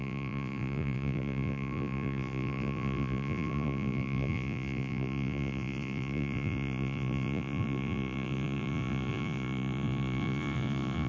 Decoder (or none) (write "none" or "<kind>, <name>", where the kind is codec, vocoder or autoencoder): vocoder, Vocos